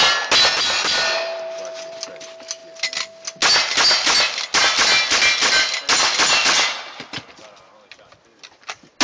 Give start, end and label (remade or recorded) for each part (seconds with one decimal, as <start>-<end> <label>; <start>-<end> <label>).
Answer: 0.0-0.5 recorded; 0.5-2.0 remade; 2.0-9.0 recorded